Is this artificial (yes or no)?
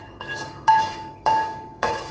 yes